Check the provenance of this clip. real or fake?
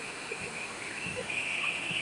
fake